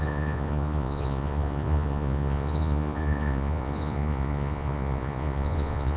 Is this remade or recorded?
remade